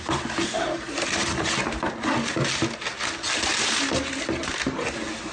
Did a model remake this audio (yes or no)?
no